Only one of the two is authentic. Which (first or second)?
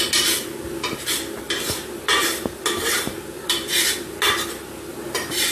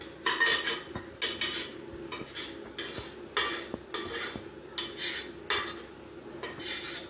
second